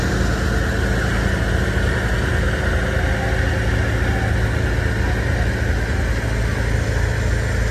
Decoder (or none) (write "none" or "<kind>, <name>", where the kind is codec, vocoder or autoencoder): none